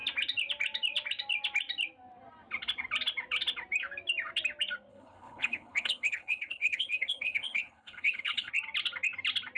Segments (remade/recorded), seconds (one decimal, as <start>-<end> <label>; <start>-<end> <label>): 0.0-4.9 recorded; 4.9-8.5 remade; 8.5-9.6 recorded